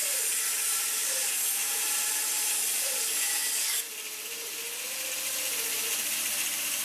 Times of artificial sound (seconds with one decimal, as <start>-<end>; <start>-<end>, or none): none